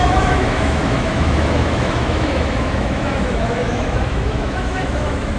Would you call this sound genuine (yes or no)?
no